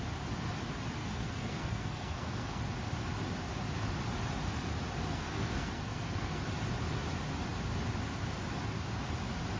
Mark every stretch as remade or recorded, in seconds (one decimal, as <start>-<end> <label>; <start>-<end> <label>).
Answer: 0.0-1.0 recorded; 1.0-2.6 remade; 2.6-5.1 recorded; 5.1-6.4 remade; 6.4-9.6 recorded